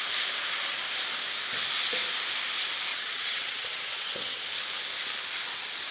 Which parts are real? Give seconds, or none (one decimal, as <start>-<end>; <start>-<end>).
0.0-2.9; 4.4-5.9